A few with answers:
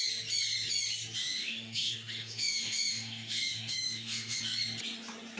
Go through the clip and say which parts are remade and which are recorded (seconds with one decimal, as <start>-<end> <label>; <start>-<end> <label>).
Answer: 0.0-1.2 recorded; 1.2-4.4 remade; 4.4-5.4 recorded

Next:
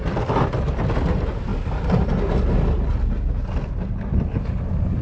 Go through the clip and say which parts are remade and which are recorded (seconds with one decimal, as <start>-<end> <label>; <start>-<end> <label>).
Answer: 0.0-5.0 recorded

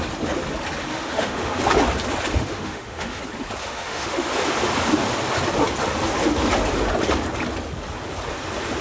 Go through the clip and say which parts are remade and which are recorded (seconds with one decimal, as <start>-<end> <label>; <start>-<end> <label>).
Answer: 0.0-0.9 recorded; 0.9-1.6 remade; 1.6-2.3 recorded; 2.3-3.2 remade; 3.2-3.6 recorded; 3.6-4.3 remade; 4.3-8.8 recorded

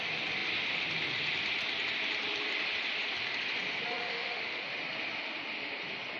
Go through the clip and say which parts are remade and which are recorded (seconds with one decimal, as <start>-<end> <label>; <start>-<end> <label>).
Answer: 0.0-4.0 recorded; 4.0-4.6 remade; 4.6-6.2 recorded

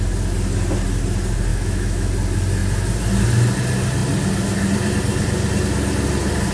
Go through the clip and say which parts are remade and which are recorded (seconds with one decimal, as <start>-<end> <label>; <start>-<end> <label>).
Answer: 0.0-1.5 recorded; 1.5-2.1 remade; 2.1-6.5 recorded

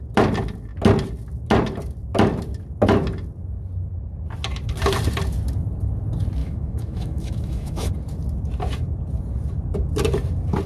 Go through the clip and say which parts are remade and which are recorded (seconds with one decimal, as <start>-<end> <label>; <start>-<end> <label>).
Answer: 0.0-6.4 recorded; 6.4-7.9 remade; 7.9-10.7 recorded